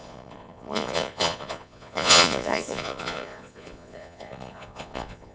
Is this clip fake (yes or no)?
yes